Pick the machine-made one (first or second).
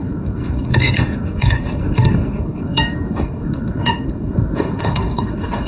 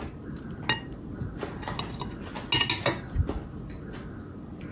first